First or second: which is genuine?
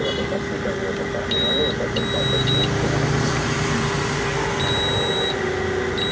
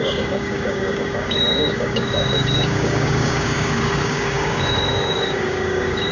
first